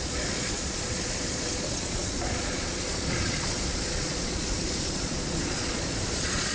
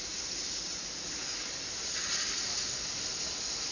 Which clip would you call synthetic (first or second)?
first